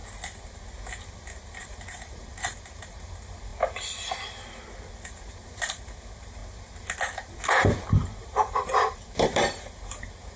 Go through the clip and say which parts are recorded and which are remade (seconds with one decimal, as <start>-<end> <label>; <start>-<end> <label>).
0.0-1.5 recorded; 1.5-3.5 remade; 3.5-5.3 recorded; 5.3-6.4 remade; 6.4-8.2 recorded; 8.2-10.4 remade